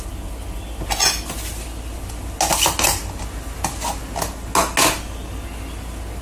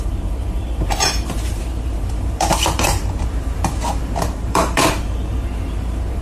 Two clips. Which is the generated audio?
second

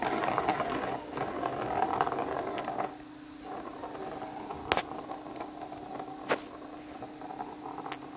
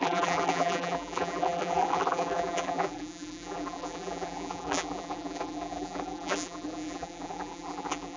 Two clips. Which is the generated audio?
second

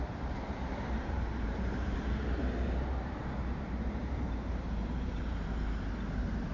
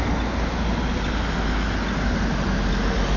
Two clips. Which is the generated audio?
first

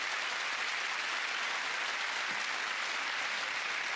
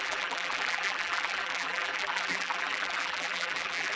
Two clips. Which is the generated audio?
second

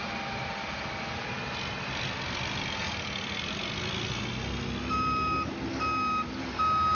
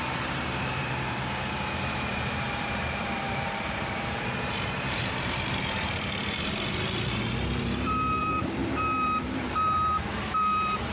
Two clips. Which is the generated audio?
second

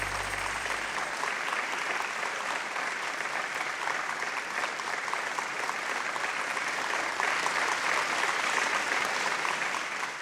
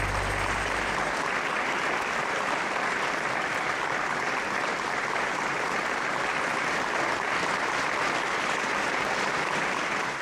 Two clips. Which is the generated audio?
first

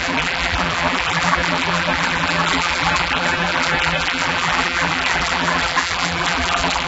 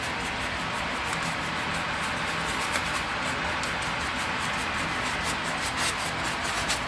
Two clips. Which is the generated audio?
first